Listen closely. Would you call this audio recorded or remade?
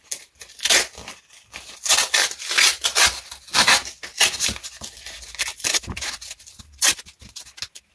recorded